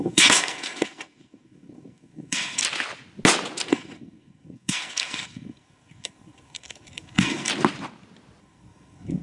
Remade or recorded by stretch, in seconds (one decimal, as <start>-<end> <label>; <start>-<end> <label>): 0.0-2.6 remade; 2.6-3.7 recorded; 3.7-7.5 remade; 7.5-8.4 recorded; 8.4-9.2 remade